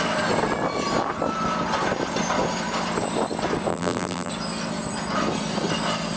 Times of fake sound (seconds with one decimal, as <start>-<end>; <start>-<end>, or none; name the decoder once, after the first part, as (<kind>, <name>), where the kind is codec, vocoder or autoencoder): 3.7-4.3 (vocoder, BigVGAN v2)